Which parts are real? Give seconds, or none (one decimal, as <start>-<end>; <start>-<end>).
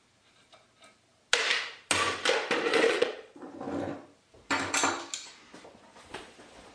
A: 0.0-2.7; 3.5-5.9